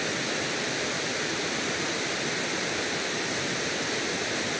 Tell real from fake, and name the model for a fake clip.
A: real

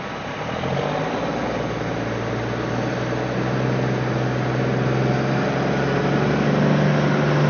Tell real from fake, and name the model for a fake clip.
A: real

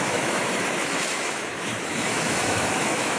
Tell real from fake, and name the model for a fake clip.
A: fake, autoencoder, DAC-VAE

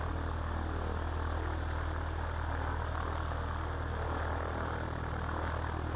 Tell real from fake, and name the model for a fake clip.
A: real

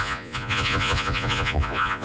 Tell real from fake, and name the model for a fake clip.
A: fake, vocoder, Vocos